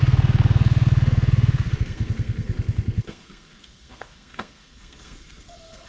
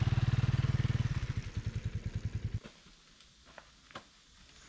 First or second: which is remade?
first